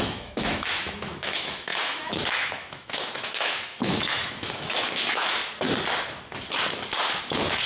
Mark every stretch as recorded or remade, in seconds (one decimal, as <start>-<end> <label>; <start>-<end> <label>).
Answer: 0.0-5.4 remade; 5.4-7.2 recorded; 7.2-7.7 remade